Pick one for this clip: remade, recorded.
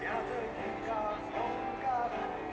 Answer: recorded